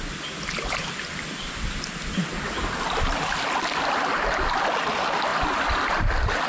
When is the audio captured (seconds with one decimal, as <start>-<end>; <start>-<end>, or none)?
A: 0.0-6.5